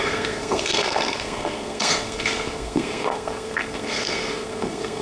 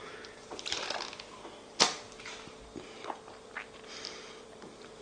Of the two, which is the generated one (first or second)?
first